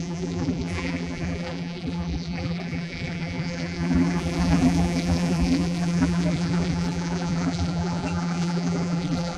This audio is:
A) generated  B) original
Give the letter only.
A